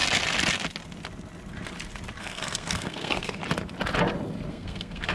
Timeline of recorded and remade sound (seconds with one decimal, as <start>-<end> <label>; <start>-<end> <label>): 0.0-2.2 recorded; 2.2-3.4 remade; 3.4-4.5 recorded; 4.5-5.1 remade

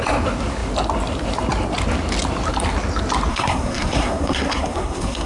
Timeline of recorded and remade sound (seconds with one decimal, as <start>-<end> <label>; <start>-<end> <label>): 0.0-3.3 recorded; 3.3-5.3 remade

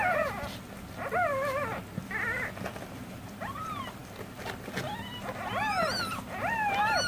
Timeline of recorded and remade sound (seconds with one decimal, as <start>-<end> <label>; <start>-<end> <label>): 0.0-7.1 recorded